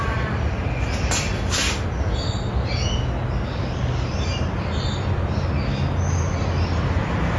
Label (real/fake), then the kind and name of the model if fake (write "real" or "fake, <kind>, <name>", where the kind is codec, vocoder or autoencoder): real